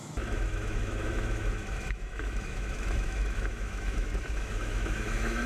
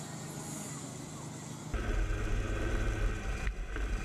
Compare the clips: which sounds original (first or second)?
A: second